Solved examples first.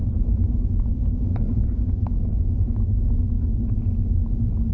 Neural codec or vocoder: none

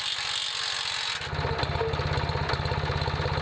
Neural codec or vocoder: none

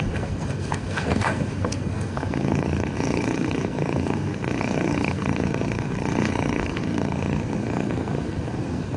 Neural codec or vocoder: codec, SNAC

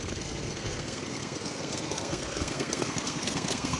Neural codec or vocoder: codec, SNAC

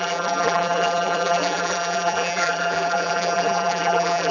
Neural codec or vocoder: vocoder, BigVGAN v2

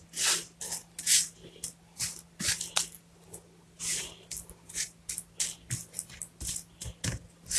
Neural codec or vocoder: none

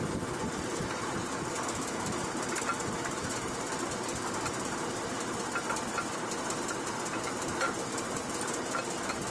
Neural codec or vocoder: none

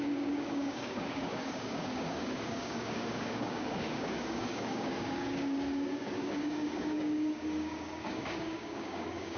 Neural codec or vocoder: codec, DAC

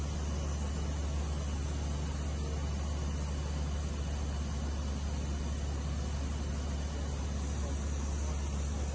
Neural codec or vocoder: none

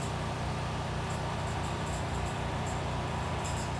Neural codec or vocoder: vocoder, BigVGAN v2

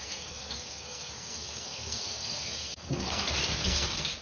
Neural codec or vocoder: codec, SNAC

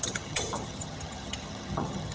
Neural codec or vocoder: vocoder, HiFi-GAN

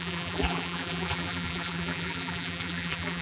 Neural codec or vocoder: vocoder, BigVGAN v2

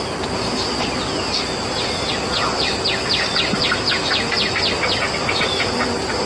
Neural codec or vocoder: none